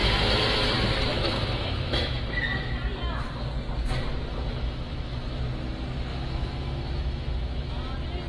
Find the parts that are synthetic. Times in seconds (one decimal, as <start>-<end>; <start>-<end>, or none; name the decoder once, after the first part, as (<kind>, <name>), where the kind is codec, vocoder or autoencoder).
0.0-0.7 (autoencoder, DAC-VAE); 1.1-2.3; 4.3-5.4; 6.1-7.7